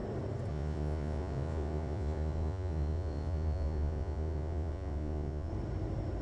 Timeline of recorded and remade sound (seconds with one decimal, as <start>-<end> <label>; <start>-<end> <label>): 0.0-0.5 recorded; 0.5-5.5 remade; 5.5-6.2 recorded